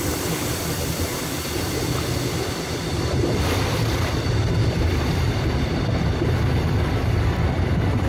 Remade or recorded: remade